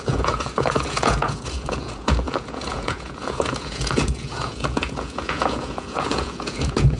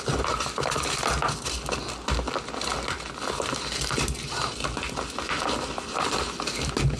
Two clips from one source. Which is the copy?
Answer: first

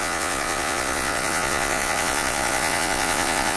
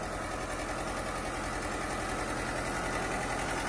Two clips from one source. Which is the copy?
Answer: first